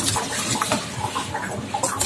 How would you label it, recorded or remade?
recorded